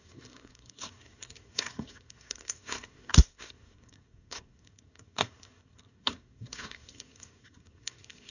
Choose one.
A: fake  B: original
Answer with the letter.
A